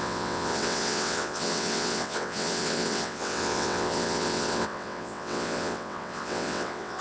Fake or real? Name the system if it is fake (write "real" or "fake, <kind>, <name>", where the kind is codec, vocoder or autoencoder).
fake, vocoder, WaveNeXt